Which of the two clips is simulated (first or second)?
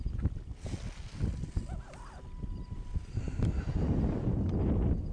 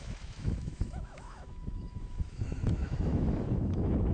second